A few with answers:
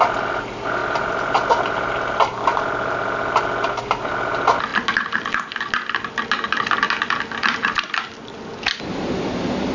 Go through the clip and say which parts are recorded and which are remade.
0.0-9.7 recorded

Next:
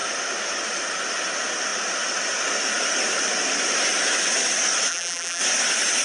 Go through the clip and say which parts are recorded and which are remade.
0.0-4.9 recorded; 4.9-5.4 remade; 5.4-6.0 recorded

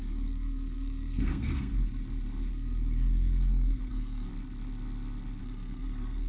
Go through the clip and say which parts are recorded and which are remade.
0.0-1.7 remade; 1.7-2.5 recorded; 2.5-4.3 remade; 4.3-5.4 recorded; 5.4-6.3 remade